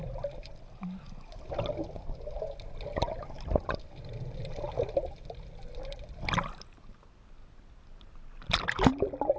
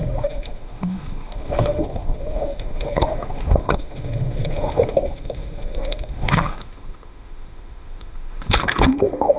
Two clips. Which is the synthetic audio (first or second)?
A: second